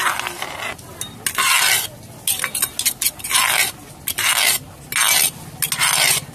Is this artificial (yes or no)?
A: no